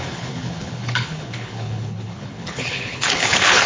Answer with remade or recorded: remade